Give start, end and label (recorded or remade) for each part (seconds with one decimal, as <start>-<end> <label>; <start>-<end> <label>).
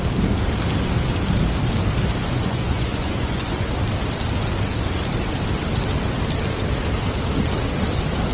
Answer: 0.0-2.2 recorded; 2.2-3.7 remade; 3.7-8.3 recorded